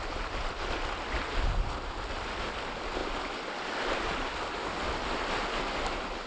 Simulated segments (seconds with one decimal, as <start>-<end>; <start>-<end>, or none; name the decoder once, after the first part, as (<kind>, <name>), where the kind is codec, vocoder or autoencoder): none